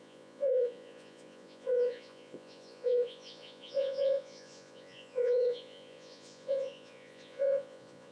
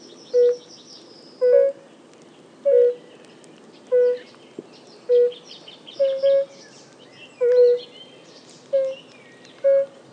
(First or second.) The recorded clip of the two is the second